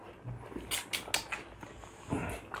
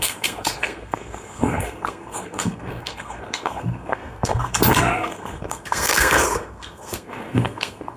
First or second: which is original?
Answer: first